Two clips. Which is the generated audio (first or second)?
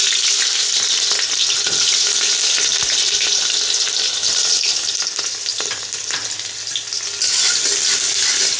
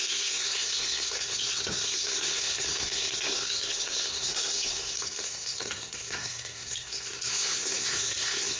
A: second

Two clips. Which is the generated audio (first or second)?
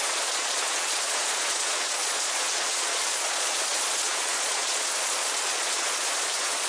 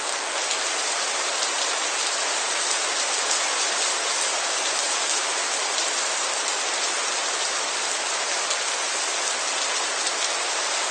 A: first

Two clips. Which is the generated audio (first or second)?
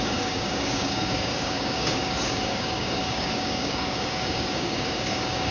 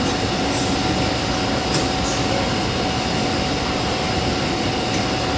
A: first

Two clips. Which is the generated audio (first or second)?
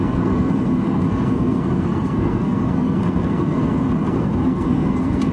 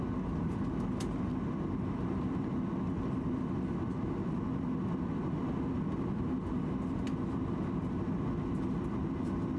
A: first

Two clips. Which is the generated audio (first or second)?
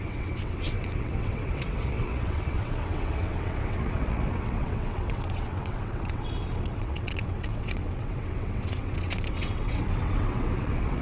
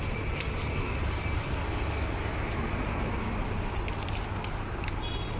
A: first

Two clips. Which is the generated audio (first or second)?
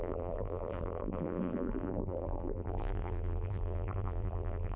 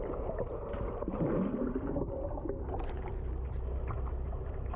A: first